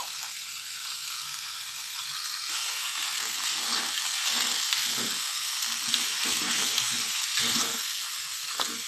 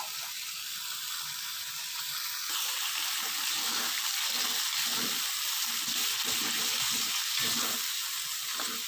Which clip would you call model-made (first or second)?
first